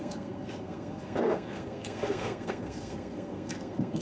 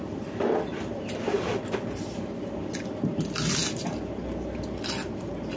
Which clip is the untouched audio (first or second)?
second